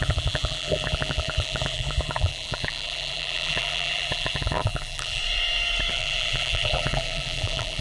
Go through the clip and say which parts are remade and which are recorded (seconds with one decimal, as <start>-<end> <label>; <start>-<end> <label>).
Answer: 0.0-5.2 remade; 5.2-5.9 recorded; 5.9-7.8 remade